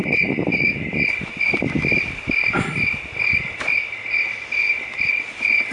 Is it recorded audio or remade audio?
remade